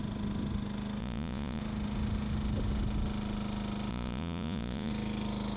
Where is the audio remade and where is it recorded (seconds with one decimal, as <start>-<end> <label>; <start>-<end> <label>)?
0.0-1.0 recorded; 1.0-1.6 remade; 1.6-3.9 recorded; 3.9-4.9 remade; 4.9-5.6 recorded